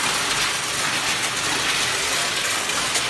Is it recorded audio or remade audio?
recorded